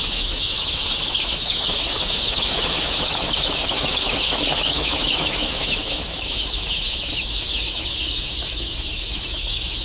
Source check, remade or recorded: remade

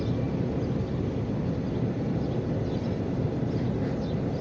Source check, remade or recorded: recorded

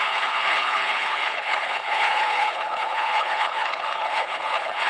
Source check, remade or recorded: remade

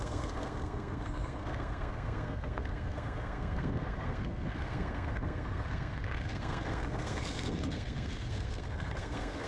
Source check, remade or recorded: remade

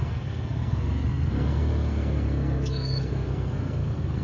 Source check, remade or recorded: remade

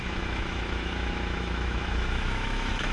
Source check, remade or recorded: remade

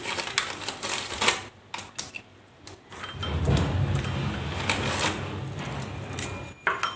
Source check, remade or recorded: recorded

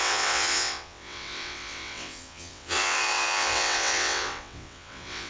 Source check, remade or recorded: remade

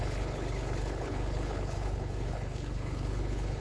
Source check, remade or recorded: remade